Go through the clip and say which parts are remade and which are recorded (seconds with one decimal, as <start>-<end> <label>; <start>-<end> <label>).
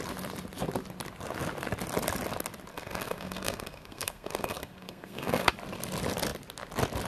0.0-2.7 recorded; 2.7-5.5 remade; 5.5-7.1 recorded